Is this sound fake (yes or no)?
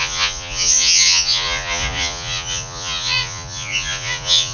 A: yes